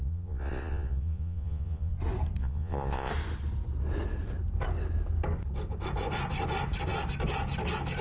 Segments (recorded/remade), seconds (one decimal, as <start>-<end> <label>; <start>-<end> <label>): 0.0-1.9 remade; 1.9-2.4 recorded; 2.4-3.1 remade; 3.1-8.0 recorded